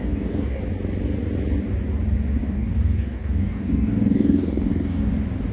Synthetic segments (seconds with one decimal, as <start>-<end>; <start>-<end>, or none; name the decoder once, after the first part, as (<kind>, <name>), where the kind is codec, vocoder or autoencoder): 0.0-0.6 (codec, DAC); 2.4-5.1